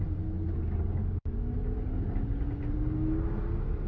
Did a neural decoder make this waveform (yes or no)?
no